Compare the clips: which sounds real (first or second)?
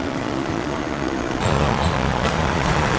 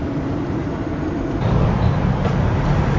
second